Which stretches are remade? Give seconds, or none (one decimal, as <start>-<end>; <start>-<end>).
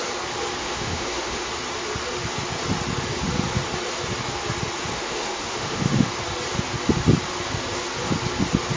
0.6-1.5; 4.9-6.1